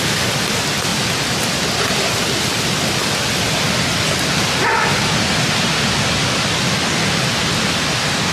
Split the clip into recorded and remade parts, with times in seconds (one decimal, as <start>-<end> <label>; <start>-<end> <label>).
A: 0.0-8.3 recorded